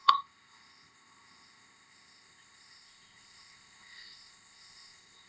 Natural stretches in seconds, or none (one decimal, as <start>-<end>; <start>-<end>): none